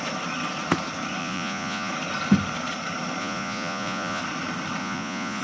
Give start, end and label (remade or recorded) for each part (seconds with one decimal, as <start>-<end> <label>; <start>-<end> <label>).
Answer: 0.0-1.2 recorded; 1.2-1.9 remade; 1.9-3.2 recorded; 3.2-4.2 remade; 4.2-4.8 recorded; 4.8-5.4 remade

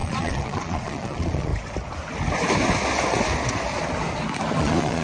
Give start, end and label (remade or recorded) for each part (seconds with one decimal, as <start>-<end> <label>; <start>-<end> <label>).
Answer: 0.0-1.5 remade; 1.5-4.5 recorded; 4.5-5.0 remade